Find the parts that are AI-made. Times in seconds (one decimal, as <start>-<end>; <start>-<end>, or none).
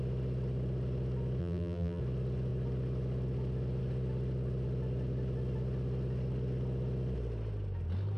1.4-2.0